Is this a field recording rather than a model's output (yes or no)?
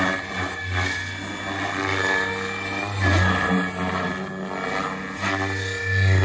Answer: yes